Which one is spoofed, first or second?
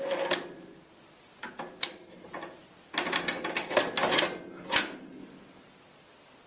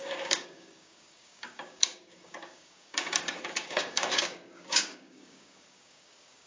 second